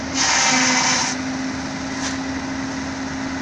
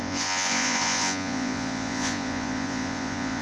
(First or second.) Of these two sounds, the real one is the first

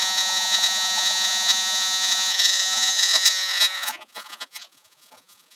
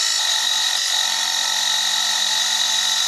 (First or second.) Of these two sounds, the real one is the second